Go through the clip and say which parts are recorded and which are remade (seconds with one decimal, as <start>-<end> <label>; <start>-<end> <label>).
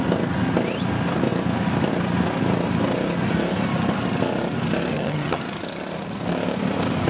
0.0-4.9 recorded; 4.9-5.4 remade; 5.4-7.1 recorded